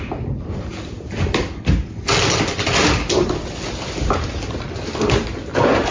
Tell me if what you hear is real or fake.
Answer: real